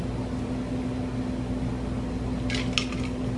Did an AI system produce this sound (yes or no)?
no